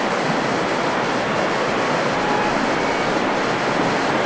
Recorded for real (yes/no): yes